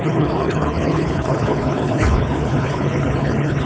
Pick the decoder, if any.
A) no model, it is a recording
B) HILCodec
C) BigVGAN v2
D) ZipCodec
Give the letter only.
B